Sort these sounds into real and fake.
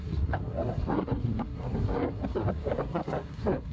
fake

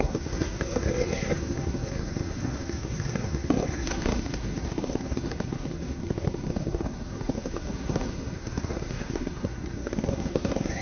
fake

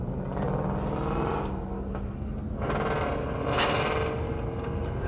real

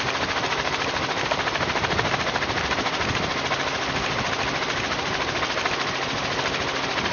real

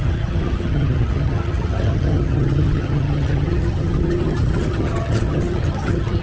fake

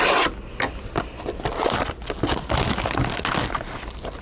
real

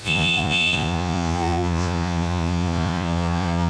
fake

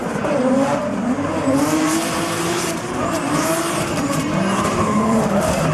fake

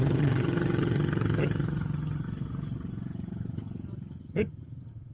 fake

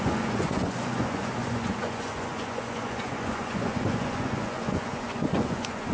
fake